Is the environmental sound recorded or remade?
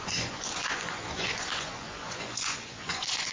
remade